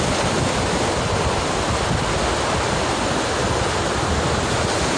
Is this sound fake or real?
real